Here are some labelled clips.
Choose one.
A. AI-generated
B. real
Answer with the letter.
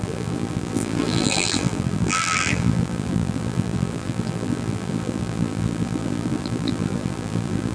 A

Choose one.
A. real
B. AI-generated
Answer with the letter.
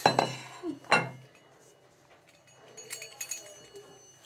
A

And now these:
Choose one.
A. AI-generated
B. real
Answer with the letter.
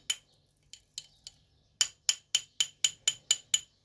B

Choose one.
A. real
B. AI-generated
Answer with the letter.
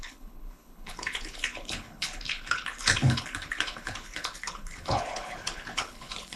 B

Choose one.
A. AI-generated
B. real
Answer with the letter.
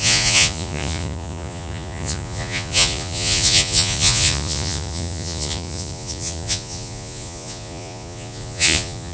A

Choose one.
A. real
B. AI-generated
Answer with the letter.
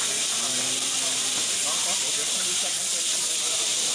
A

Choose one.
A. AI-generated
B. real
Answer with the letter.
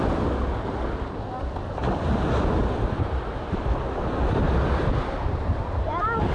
B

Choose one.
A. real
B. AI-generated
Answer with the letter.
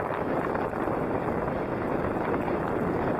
A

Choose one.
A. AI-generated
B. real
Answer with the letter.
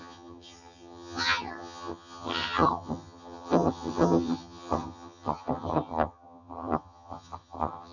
A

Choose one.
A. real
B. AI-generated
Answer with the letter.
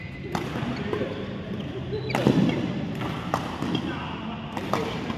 A